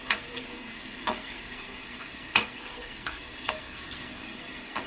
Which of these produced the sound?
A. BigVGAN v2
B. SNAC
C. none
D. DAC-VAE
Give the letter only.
B